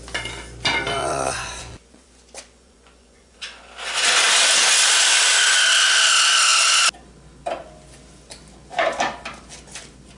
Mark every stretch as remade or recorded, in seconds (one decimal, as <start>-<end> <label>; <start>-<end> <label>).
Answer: 0.0-1.0 recorded; 1.0-3.6 remade; 3.6-10.2 recorded